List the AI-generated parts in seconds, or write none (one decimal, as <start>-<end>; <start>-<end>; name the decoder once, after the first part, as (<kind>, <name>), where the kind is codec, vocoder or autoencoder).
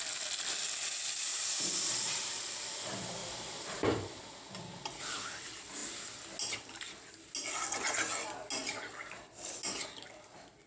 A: 1.3-2.3 (vocoder, BigVGAN v2); 3.2-4.2